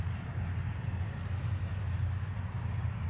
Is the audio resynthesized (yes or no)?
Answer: no